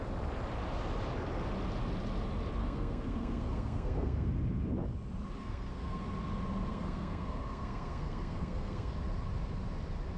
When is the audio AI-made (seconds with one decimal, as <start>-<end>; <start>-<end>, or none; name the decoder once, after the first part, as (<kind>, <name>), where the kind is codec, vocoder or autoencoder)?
2.6-4.3 (codec, SNAC); 5.4-6.0; 6.7-8.9